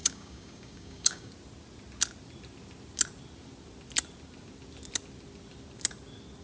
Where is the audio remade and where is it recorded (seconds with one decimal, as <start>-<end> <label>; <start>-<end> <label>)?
0.0-1.3 remade; 1.3-6.4 recorded

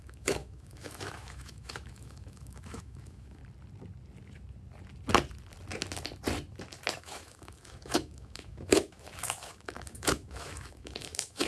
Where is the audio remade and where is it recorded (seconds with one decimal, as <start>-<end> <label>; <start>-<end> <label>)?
0.0-3.4 remade; 3.4-7.0 recorded; 7.0-11.5 remade

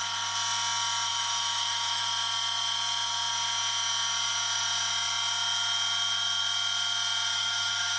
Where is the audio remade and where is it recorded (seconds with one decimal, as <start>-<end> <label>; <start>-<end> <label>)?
0.0-1.1 recorded; 1.1-2.0 remade; 2.0-7.3 recorded; 7.3-8.0 remade

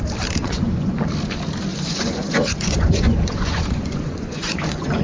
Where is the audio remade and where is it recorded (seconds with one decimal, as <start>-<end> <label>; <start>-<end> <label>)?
0.0-0.4 recorded; 0.4-1.0 remade; 1.0-1.7 recorded; 1.7-5.0 remade

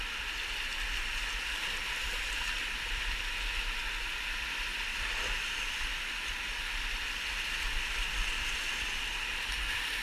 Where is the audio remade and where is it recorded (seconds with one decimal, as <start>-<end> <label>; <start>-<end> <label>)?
0.0-0.7 remade; 0.7-1.5 recorded; 1.5-10.0 remade